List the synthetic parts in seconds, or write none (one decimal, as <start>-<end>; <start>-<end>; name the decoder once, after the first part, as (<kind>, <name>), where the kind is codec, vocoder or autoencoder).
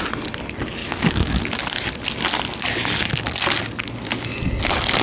0.8-1.4 (autoencoder, DAC-VAE)